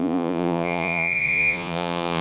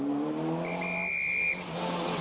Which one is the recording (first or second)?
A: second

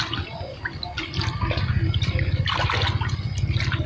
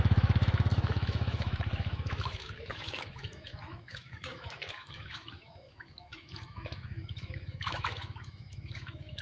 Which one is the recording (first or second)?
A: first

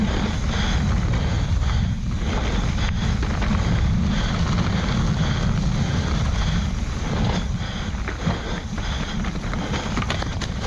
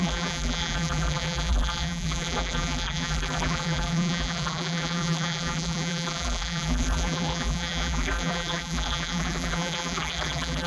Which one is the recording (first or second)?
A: first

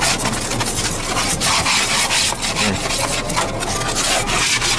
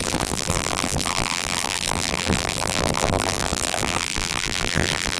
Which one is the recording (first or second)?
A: first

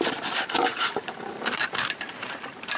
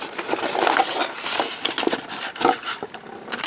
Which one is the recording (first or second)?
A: second